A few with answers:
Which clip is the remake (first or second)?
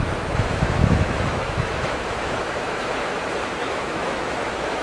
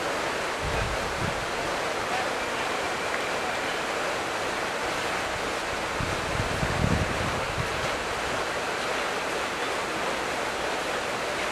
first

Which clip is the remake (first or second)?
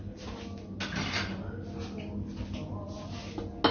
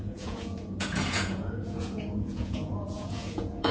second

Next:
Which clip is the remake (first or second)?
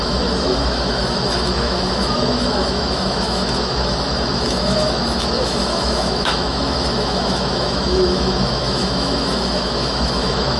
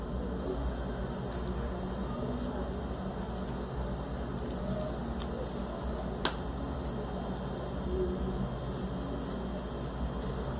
first